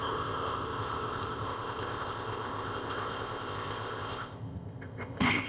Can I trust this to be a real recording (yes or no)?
no